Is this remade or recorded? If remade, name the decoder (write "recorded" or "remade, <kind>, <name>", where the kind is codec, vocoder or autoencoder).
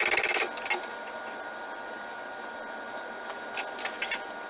recorded